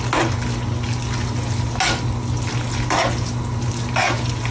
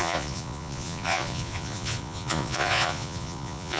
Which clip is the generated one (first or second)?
second